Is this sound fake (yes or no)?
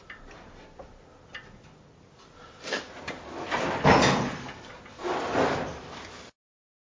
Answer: no